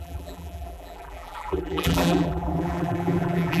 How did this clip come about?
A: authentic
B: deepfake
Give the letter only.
B